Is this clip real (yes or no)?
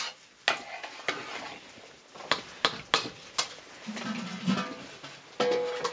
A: yes